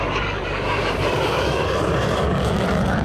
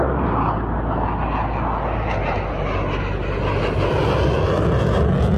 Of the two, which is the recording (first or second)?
second